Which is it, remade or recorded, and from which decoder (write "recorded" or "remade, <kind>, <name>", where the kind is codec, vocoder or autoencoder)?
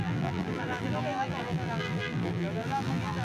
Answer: remade, vocoder, BigVGAN v2